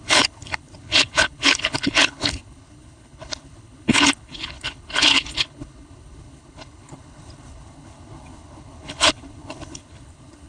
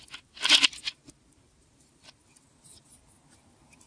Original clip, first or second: second